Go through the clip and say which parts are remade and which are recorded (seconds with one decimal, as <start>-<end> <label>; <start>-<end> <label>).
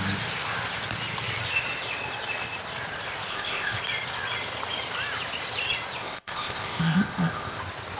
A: 0.0-3.3 recorded; 3.3-3.8 remade; 3.8-6.0 recorded; 6.0-7.6 remade; 7.6-8.0 recorded